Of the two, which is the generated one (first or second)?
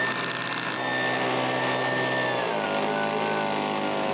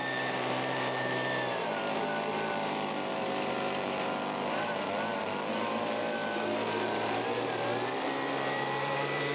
second